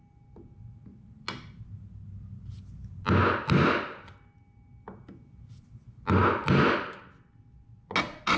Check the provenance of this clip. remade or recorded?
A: recorded